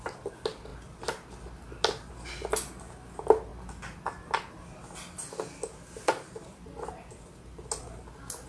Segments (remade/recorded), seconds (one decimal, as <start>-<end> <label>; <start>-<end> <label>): 0.0-8.5 recorded